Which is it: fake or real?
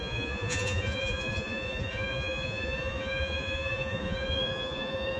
fake